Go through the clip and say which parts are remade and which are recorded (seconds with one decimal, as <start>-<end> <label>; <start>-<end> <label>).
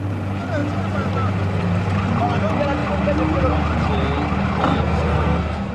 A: 0.0-4.7 recorded; 4.7-5.7 remade